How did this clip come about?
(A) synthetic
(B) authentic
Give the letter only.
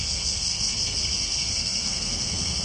A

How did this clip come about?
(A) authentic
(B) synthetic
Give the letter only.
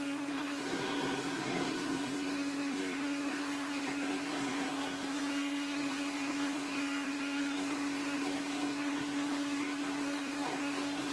B